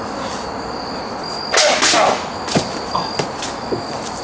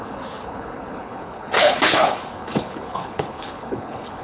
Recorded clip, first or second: first